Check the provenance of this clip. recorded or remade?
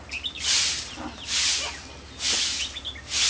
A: recorded